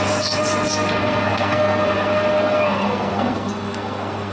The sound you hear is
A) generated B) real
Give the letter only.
A